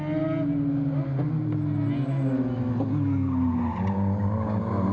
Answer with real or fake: real